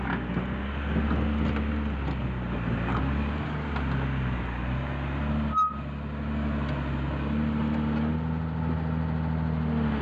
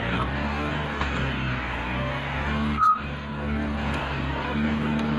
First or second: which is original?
first